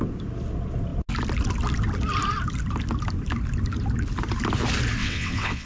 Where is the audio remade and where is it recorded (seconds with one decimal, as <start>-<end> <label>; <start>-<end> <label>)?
0.0-5.0 recorded; 5.0-5.7 remade